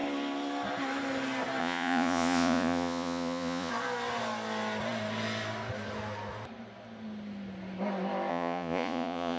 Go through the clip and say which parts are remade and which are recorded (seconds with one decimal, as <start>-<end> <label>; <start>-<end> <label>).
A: 0.0-1.6 recorded; 1.6-3.7 remade; 3.7-8.3 recorded; 8.3-9.4 remade

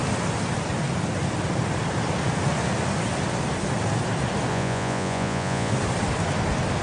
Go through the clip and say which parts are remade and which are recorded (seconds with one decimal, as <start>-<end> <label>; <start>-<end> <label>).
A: 0.0-4.5 recorded; 4.5-5.7 remade; 5.7-6.8 recorded

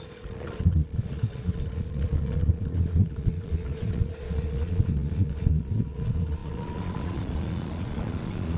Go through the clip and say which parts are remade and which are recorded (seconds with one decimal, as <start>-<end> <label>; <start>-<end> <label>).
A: 0.0-8.6 remade

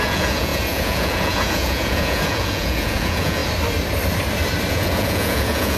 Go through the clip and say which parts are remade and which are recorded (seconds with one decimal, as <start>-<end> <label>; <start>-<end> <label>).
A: 0.0-3.4 remade; 3.4-4.7 recorded; 4.7-5.8 remade

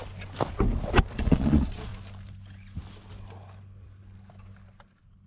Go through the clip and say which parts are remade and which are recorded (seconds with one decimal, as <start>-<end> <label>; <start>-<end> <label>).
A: 0.0-1.1 recorded; 1.1-1.9 remade; 1.9-5.3 recorded

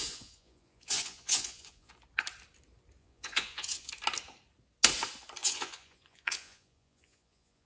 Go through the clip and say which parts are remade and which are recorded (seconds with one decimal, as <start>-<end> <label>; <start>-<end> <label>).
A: 0.0-1.9 remade; 1.9-3.0 recorded; 3.0-3.9 remade; 3.9-5.4 recorded; 5.4-7.7 remade